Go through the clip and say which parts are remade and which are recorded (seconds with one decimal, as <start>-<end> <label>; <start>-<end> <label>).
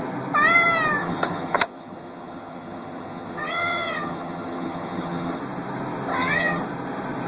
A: 0.0-1.0 recorded; 1.0-5.4 remade; 5.4-6.1 recorded; 6.1-6.6 remade; 6.6-7.3 recorded